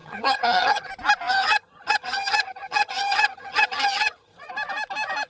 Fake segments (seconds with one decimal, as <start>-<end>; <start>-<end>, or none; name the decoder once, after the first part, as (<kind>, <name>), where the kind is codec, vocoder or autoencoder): 0.0-0.9 (vocoder, HiFi-GAN); 1.3-4.5